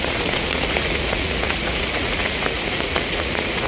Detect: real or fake fake